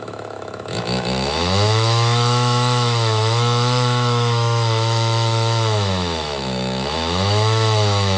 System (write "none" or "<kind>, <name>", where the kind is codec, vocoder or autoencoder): autoencoder, DAC-VAE